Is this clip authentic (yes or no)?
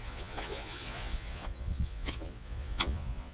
no